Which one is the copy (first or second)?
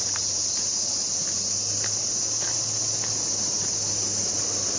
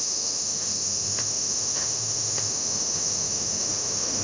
second